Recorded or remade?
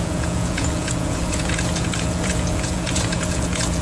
remade